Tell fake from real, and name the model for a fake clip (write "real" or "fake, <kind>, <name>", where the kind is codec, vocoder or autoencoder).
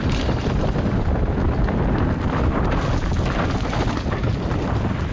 real